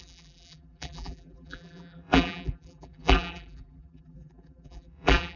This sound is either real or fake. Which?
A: fake